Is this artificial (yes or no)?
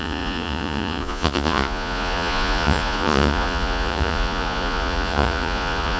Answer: yes